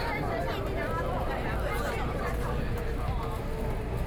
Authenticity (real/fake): real